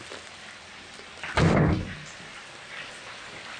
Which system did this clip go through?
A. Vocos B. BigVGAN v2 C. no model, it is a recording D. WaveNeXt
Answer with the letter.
C